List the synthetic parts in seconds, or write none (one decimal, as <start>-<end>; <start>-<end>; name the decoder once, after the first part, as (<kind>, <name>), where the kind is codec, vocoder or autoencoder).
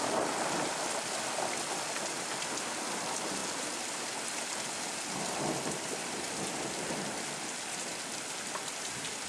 none